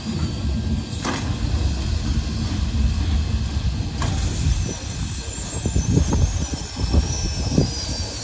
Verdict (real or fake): real